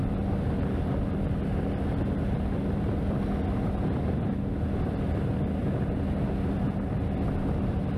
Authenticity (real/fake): real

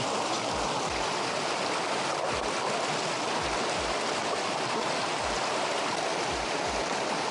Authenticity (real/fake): real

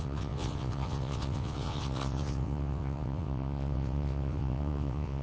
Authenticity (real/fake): fake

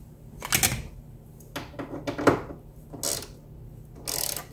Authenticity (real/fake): real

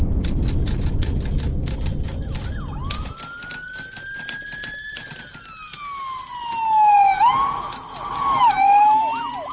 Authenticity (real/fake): real